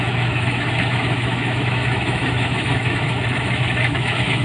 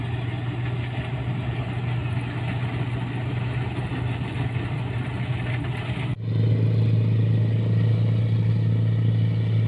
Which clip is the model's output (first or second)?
first